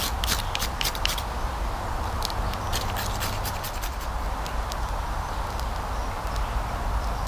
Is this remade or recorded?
recorded